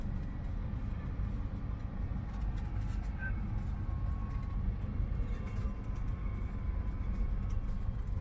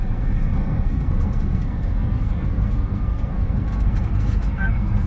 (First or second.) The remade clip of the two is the second